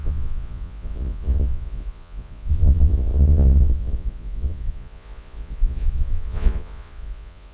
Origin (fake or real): fake